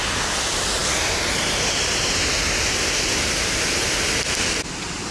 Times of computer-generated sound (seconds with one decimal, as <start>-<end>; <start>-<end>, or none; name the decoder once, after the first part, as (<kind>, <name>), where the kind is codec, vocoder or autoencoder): none